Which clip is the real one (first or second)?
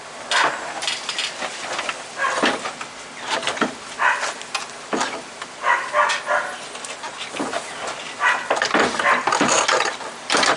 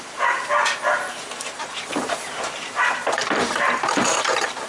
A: first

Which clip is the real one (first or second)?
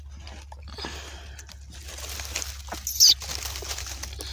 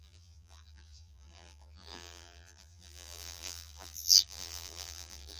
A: first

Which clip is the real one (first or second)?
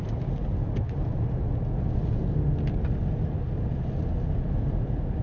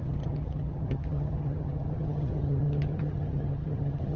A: first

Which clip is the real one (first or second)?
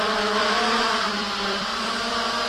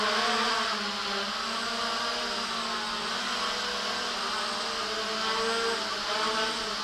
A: second